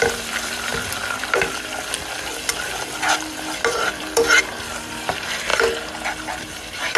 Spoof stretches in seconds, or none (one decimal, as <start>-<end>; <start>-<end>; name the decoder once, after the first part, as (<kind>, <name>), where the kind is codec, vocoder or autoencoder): 0.0-0.7 (vocoder, BigVGAN v2); 4.0-5.5; 6.3-7.0

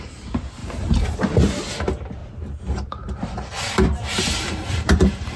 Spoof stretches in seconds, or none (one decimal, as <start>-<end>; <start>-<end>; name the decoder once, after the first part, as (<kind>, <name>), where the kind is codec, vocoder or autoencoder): 0.6-1.2 (vocoder, BigVGAN v2); 2.2-5.4